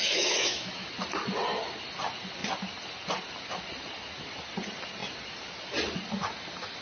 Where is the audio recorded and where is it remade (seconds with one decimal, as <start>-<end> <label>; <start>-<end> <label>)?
0.0-0.9 remade; 0.9-6.8 recorded